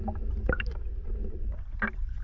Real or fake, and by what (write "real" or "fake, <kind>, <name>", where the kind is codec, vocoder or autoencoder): real